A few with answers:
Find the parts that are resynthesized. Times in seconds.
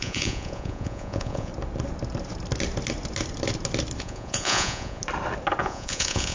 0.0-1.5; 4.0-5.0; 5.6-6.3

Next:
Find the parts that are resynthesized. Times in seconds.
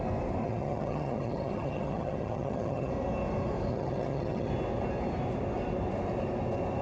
0.4-2.9; 3.7-4.5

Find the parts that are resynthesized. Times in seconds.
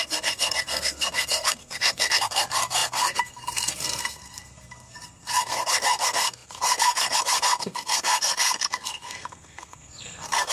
0.0-10.5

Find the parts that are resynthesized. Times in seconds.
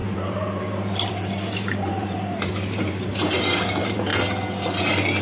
0.0-4.1